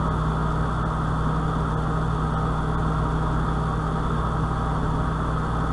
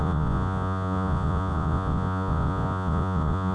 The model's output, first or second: second